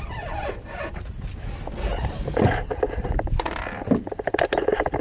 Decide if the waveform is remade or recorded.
recorded